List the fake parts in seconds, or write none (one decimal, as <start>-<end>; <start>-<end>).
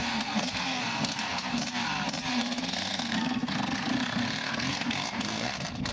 0.0-1.6; 2.3-5.9